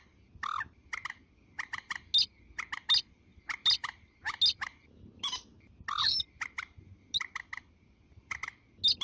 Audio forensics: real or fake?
real